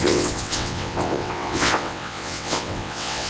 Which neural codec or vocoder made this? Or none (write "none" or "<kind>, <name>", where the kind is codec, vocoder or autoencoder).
vocoder, WaveNeXt